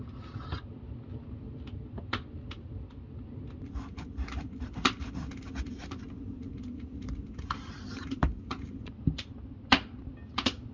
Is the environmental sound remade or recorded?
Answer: recorded